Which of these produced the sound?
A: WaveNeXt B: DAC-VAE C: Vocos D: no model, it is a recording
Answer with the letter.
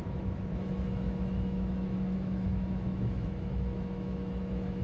B